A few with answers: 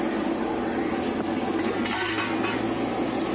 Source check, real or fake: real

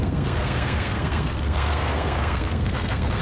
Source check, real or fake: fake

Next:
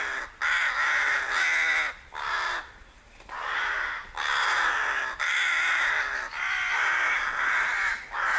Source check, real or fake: real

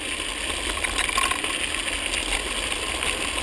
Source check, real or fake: real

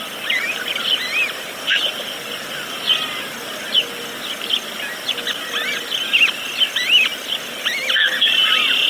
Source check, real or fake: real